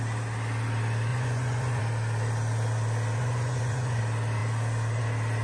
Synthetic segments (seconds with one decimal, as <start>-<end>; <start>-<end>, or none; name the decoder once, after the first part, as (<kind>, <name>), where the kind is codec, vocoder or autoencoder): 1.1-1.8 (vocoder, Vocos); 3.2-4.0